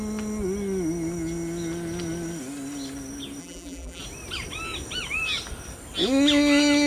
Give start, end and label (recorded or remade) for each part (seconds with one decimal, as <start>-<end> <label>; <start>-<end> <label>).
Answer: 0.0-3.4 recorded; 3.4-4.0 remade; 4.0-6.9 recorded